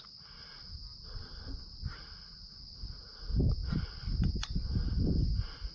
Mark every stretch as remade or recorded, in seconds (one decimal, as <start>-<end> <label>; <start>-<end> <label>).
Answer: 0.0-5.7 recorded